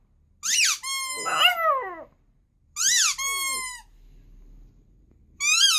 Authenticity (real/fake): real